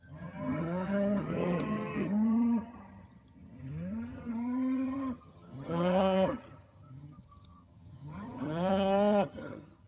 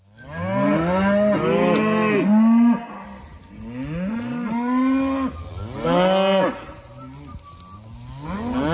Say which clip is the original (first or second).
second